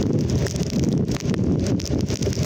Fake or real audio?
real